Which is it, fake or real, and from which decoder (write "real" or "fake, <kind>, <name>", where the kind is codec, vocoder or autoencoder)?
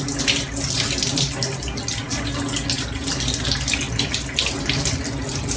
real